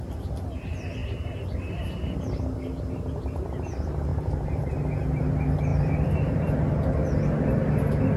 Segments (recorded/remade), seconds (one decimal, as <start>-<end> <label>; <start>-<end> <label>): 0.0-4.1 recorded; 4.1-4.7 remade; 4.7-5.7 recorded; 5.7-6.5 remade; 6.5-8.2 recorded